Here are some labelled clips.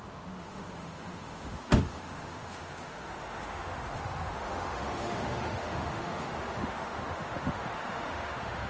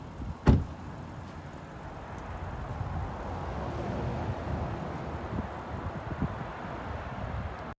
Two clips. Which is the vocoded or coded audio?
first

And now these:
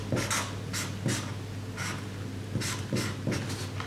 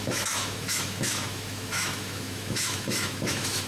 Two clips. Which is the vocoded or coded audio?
second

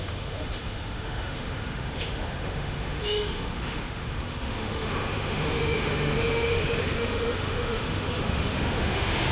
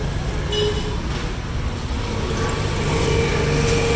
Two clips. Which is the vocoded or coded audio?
first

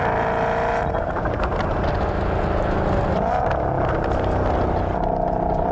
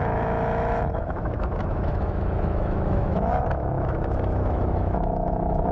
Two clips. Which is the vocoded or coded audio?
second